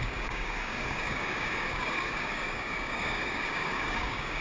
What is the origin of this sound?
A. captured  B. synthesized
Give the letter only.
B